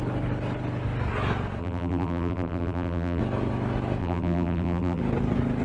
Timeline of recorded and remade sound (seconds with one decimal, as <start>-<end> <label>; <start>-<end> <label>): 0.0-1.6 recorded; 1.6-3.2 remade; 3.2-4.0 recorded; 4.0-5.0 remade; 5.0-5.6 recorded